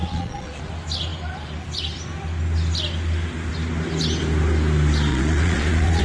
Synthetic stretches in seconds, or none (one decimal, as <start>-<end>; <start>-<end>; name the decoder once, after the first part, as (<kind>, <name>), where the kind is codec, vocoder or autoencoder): 0.0-0.6 (vocoder, Vocos); 5.1-6.0